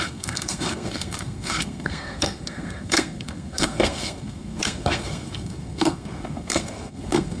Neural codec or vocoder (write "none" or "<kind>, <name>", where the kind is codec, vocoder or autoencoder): codec, SNAC